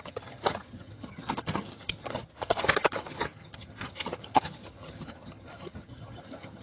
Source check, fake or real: fake